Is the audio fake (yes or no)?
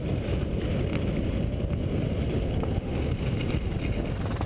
no